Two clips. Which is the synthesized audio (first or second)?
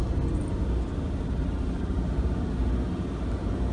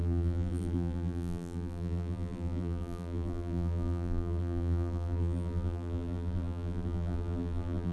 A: second